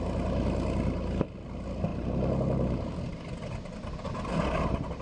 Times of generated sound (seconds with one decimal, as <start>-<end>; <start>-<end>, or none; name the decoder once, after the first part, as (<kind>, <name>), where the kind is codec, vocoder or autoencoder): none